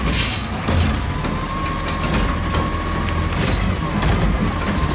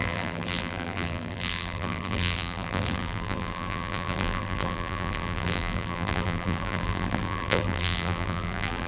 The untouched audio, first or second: first